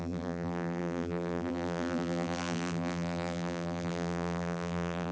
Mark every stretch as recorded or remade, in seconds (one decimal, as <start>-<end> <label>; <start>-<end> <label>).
0.0-5.1 remade